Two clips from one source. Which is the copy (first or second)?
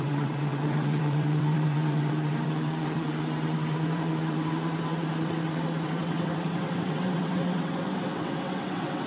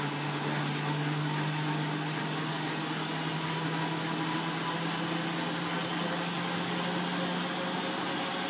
first